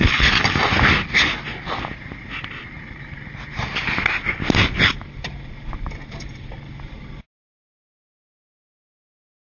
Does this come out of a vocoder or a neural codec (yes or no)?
no